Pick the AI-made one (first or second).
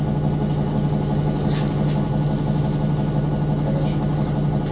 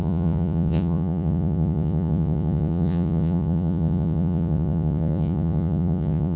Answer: second